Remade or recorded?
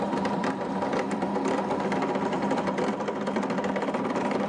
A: remade